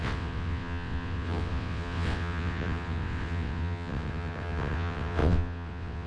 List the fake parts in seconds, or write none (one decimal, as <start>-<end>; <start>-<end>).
0.0-6.1